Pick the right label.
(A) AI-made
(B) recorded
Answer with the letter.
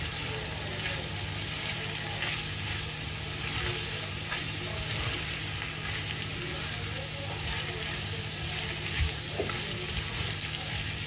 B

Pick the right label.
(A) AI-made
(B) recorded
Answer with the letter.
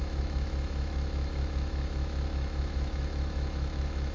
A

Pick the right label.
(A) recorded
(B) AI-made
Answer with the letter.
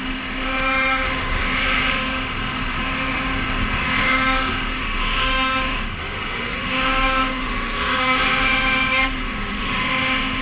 B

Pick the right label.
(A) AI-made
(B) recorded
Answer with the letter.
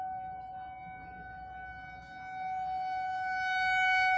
B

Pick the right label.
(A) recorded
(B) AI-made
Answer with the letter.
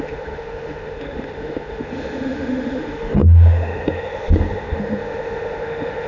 B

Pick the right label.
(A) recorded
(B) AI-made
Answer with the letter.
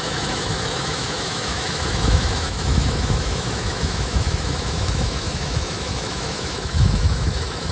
B